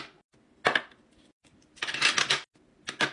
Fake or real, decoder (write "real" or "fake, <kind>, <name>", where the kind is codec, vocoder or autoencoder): real